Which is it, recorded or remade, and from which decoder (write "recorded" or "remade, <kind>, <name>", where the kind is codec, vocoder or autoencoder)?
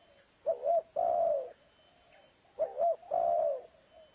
recorded